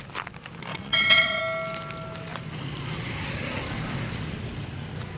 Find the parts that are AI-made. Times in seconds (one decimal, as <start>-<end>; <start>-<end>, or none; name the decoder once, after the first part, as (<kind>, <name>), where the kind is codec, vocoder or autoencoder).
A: 0.7-1.4 (vocoder, WaveNeXt)